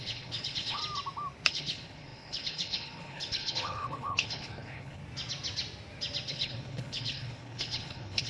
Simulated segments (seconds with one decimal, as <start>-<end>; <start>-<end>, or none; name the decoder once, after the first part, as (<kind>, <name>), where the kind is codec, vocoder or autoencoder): 0.0-0.8 (codec, HILCodec); 1.5-5.0; 6.3-8.3